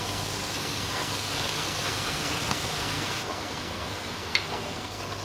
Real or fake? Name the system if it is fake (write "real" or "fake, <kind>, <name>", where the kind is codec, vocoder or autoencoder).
fake, codec, SNAC